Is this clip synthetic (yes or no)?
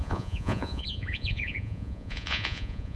yes